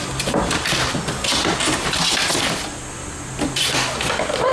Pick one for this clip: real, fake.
real